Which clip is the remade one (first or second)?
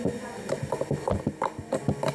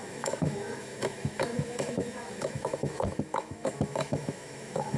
second